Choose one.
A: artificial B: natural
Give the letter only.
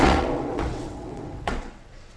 A